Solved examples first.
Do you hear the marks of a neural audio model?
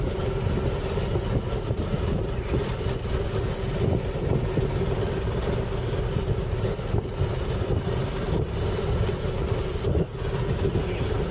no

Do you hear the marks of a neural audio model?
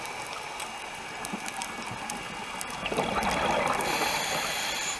no